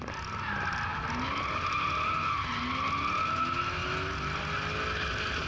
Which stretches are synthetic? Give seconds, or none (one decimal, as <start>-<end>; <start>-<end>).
none